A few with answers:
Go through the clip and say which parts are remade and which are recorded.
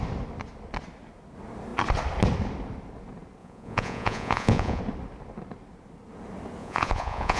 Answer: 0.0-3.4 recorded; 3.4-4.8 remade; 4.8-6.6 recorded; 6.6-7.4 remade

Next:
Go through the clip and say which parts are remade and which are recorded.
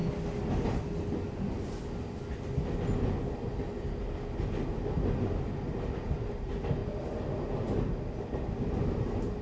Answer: 0.0-9.4 recorded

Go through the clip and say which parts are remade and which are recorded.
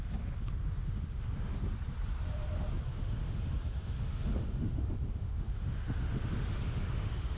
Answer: 0.0-0.6 recorded; 0.6-1.6 remade; 1.6-2.9 recorded; 2.9-7.4 remade